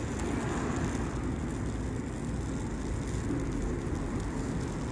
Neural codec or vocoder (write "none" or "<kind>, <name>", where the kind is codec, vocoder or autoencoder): none